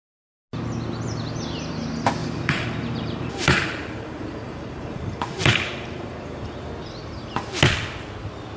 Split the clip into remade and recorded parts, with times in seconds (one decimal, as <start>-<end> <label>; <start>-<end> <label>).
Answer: 0.0-2.2 recorded; 2.2-6.7 remade; 6.7-8.6 recorded

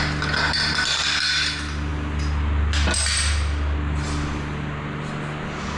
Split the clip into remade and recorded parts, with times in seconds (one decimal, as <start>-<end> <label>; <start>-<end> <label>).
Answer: 0.0-5.8 recorded